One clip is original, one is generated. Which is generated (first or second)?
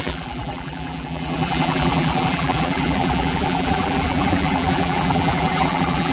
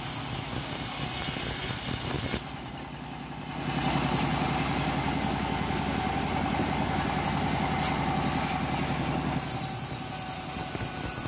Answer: first